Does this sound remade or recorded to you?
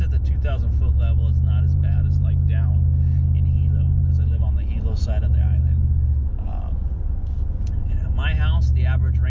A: recorded